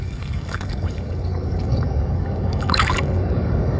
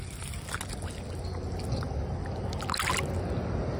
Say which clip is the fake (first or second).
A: first